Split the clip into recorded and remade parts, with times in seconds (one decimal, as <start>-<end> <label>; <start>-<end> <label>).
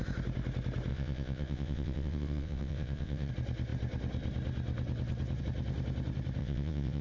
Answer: 0.0-0.9 recorded; 0.9-3.3 remade; 3.3-6.4 recorded; 6.4-7.0 remade